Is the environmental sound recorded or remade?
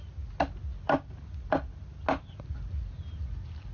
recorded